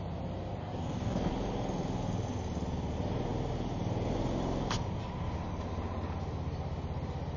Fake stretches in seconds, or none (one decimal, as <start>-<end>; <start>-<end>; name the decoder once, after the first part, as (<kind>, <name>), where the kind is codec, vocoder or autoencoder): 0.6-1.3 (codec, DAC)